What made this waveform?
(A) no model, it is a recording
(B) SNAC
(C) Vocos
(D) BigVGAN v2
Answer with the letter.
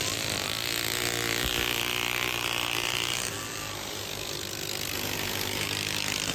A